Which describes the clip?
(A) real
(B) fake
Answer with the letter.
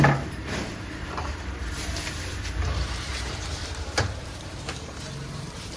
B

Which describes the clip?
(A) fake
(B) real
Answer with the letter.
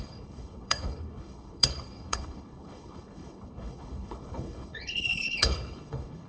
A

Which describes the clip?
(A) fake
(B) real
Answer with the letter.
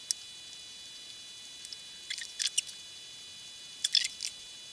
B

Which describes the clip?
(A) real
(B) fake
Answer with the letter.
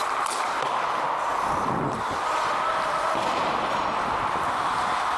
A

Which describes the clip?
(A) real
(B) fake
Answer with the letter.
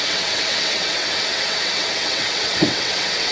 B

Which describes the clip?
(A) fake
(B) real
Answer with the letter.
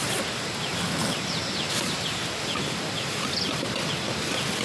B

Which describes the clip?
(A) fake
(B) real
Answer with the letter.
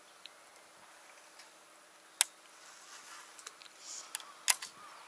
B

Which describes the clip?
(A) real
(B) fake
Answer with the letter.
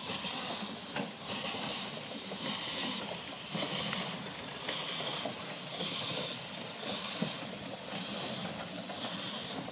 A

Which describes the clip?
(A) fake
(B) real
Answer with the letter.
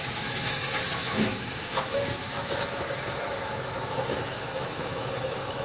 A